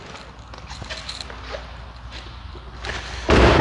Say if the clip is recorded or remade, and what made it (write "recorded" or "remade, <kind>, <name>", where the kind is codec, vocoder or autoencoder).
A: recorded